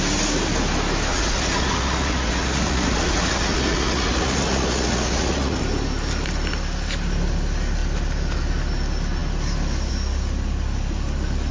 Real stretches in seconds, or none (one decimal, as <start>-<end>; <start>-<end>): 0.0-1.1; 5.6-11.5